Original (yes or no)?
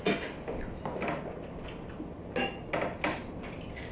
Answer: yes